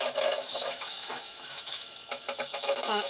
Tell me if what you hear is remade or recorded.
remade